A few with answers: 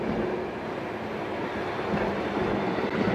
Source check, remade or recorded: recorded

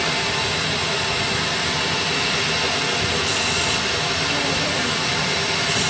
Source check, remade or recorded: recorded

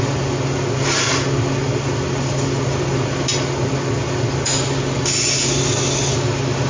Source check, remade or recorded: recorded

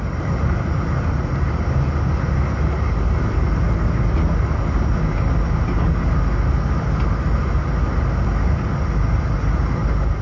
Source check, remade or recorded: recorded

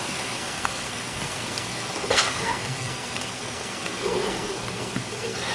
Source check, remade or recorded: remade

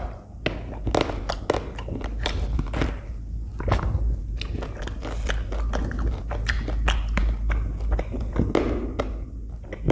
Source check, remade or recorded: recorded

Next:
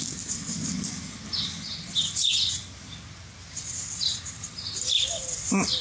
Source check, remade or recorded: recorded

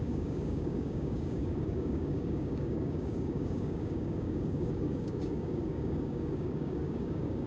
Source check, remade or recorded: remade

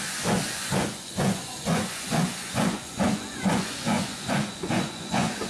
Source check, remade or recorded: remade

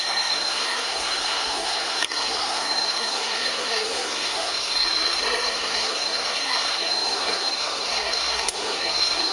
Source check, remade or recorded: remade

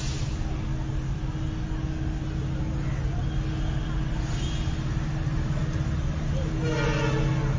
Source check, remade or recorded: recorded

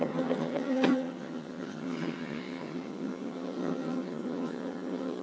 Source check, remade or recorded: remade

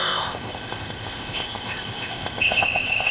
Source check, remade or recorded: remade